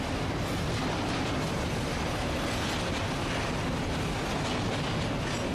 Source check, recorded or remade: recorded